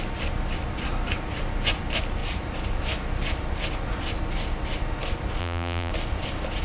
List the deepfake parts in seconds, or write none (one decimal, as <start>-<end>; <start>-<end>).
5.4-5.9